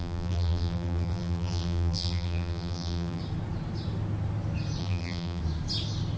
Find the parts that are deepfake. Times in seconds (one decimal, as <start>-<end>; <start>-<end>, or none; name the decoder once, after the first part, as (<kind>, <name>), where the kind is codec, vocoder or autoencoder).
0.0-3.2 (vocoder, BigVGAN v2); 4.8-5.4